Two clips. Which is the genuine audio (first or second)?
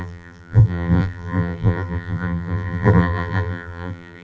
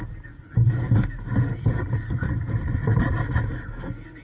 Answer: second